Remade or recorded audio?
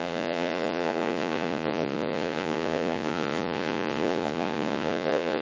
remade